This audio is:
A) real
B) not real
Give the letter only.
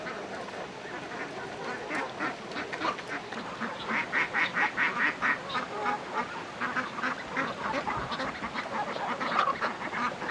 A